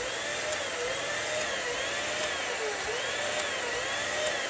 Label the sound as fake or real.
real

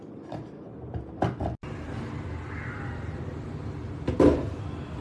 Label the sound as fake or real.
real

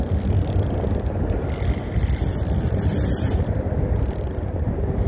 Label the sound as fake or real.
real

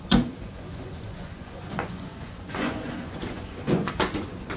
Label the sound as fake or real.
fake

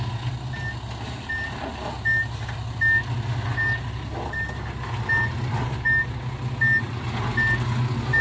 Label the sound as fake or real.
real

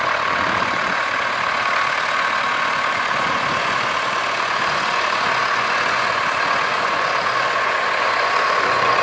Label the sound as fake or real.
fake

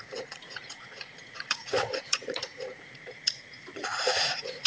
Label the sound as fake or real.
fake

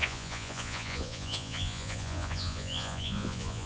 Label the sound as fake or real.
fake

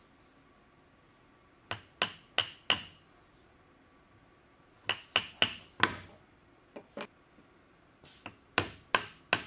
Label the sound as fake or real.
real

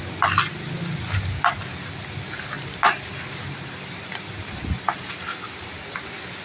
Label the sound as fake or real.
real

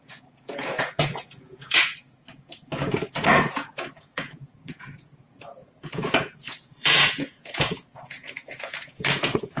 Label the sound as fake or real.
fake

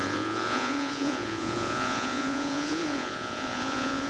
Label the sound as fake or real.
fake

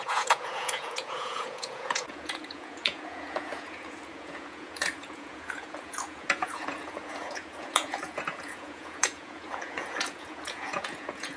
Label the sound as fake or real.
fake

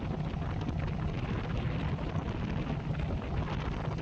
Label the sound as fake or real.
real